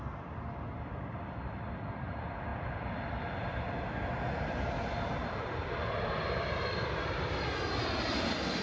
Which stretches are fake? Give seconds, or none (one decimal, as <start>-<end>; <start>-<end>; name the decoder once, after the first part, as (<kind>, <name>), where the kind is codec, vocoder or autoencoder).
none